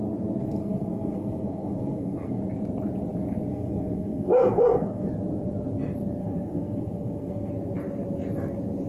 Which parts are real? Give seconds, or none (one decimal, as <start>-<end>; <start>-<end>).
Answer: 0.0-0.4; 2.4-3.5; 5.1-6.2; 7.5-8.9